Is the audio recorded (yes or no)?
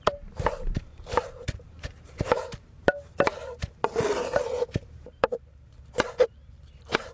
no